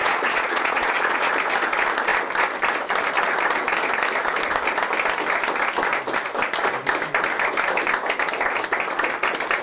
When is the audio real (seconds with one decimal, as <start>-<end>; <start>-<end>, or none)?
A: 1.3-9.6